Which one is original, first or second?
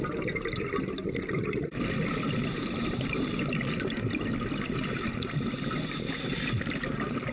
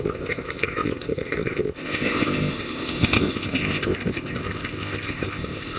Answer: first